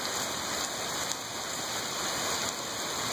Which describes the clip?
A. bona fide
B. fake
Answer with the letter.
A